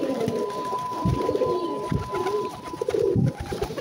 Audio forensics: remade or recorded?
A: remade